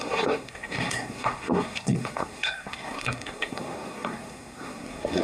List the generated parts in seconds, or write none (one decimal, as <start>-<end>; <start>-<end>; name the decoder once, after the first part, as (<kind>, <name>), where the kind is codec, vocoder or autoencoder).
0.0-5.2 (codec, SNAC)